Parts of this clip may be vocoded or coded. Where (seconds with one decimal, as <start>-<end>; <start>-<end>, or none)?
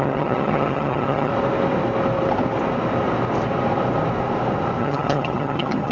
0.0-1.3; 4.8-5.9